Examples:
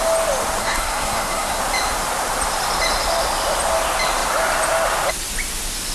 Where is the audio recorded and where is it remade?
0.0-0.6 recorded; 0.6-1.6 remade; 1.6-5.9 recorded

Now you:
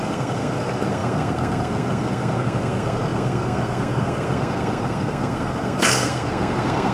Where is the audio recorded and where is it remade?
0.0-6.9 remade

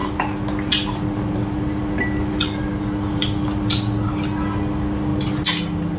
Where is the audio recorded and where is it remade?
0.0-6.0 recorded

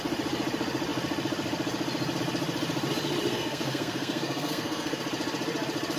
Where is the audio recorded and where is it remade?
0.0-3.3 recorded; 3.3-5.0 remade; 5.0-6.0 recorded

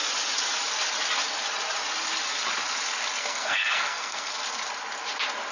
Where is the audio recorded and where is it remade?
0.0-3.2 recorded; 3.2-4.4 remade; 4.4-5.5 recorded